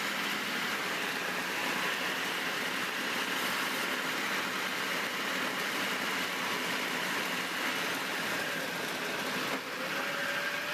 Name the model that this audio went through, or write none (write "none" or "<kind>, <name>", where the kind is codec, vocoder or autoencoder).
none